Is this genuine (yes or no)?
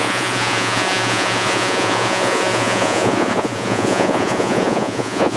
no